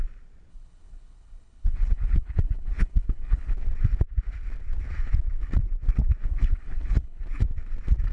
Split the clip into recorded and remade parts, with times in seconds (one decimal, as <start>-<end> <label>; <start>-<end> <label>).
0.0-0.5 recorded; 0.5-3.5 remade; 3.5-6.3 recorded; 6.3-7.2 remade; 7.2-8.1 recorded